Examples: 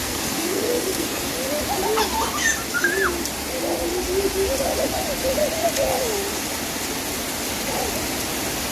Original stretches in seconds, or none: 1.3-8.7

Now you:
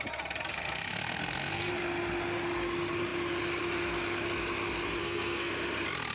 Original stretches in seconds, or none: 0.0-0.5; 1.7-5.0; 5.5-6.1

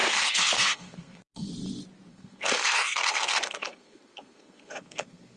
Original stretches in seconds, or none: 1.5-2.1

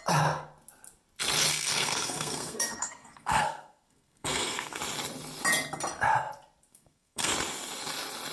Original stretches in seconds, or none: 0.0-1.5; 4.8-6.7; 7.3-8.3

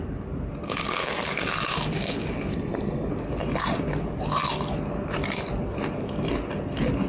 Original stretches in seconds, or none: 0.0-2.5; 3.1-7.1

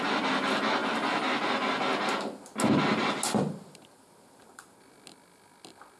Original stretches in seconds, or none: 0.0-6.0

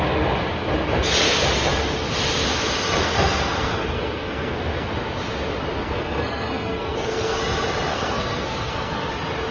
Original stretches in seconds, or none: 0.0-3.0; 4.9-5.8; 7.4-7.9; 9.1-9.5

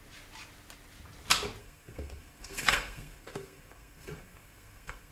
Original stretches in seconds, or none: 0.0-1.6